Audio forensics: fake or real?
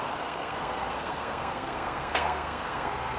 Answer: fake